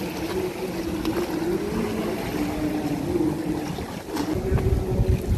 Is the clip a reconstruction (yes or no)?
no